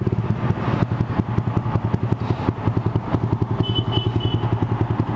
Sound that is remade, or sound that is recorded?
recorded